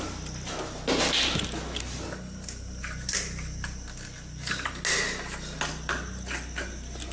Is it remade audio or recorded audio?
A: recorded